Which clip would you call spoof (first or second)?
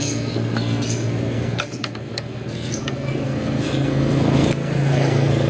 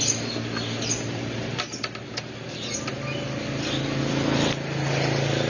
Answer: first